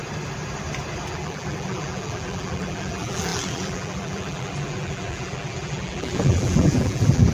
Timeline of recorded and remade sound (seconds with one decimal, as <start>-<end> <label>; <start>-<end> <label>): 0.0-1.1 recorded; 1.1-7.3 remade